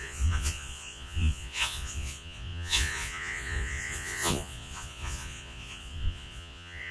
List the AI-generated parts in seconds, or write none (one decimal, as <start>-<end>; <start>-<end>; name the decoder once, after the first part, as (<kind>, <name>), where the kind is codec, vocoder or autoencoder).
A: 0.0-6.9 (vocoder, Vocos)